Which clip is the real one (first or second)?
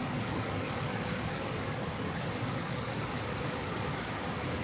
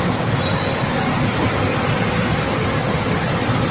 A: second